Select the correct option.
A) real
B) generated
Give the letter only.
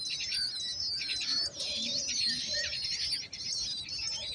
A